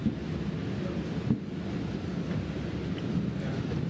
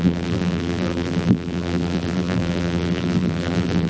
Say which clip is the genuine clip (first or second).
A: first